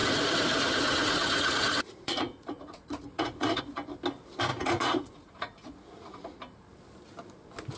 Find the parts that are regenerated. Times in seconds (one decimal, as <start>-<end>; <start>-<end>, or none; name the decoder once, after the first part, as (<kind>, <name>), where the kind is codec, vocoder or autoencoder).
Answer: 0.0-3.6 (vocoder, Vocos); 4.5-6.4